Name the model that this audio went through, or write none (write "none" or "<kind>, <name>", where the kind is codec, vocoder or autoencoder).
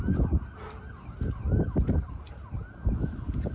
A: none